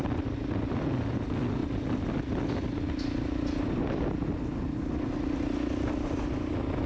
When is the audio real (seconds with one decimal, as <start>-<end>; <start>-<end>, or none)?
0.0-6.9